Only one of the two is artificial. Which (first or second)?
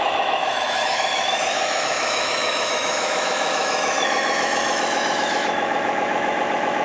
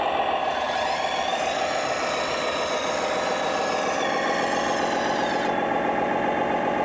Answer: first